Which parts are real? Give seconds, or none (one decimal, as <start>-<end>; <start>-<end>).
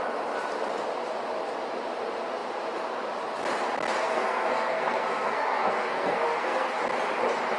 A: 0.0-4.0; 6.8-7.6